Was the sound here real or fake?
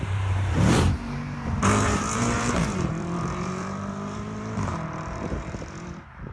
fake